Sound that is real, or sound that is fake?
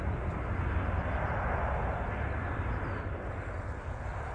real